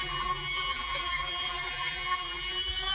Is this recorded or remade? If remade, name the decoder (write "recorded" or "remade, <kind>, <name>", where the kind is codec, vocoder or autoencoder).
remade, vocoder, BigVGAN v2